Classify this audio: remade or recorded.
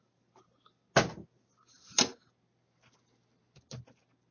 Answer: recorded